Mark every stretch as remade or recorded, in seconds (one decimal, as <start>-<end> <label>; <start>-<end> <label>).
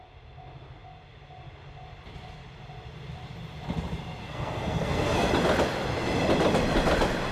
0.0-4.2 recorded; 4.2-5.3 remade; 5.3-7.3 recorded